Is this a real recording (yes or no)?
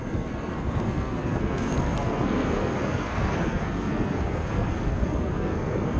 no